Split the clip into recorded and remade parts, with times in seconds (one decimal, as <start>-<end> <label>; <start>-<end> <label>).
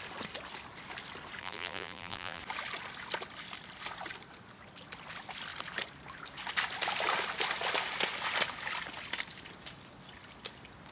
0.0-1.4 recorded; 1.4-2.4 remade; 2.4-10.9 recorded